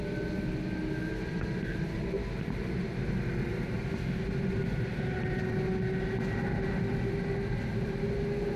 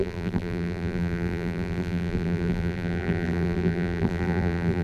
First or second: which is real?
first